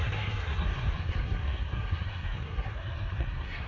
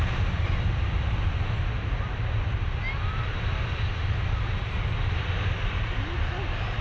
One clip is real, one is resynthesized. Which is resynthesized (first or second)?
first